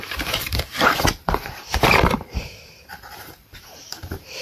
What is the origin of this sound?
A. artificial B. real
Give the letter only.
A